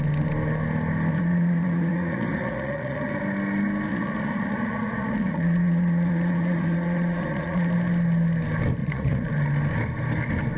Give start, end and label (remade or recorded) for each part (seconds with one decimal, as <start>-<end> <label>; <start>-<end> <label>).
0.0-1.1 recorded; 1.1-3.1 remade; 3.1-3.9 recorded; 3.9-7.7 remade; 7.7-8.8 recorded; 8.8-9.3 remade; 9.3-10.6 recorded